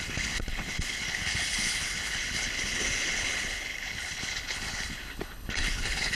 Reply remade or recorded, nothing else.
remade